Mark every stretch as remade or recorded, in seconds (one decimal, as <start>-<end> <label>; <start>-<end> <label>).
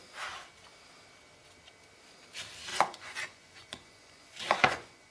0.0-2.7 recorded; 2.7-5.1 remade